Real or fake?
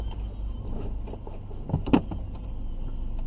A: real